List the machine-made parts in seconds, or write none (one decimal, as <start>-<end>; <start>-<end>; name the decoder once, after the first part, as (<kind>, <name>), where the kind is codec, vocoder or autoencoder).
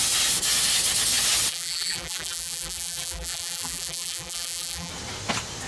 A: 1.5-4.9 (vocoder, BigVGAN v2)